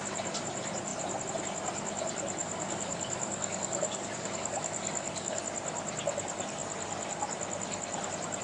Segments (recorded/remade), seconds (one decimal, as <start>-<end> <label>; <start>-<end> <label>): 0.0-2.4 recorded; 2.4-5.4 remade; 5.4-8.4 recorded